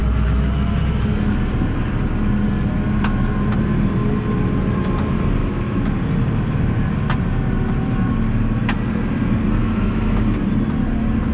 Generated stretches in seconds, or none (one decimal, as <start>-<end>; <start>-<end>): 5.4-5.9; 9.6-10.2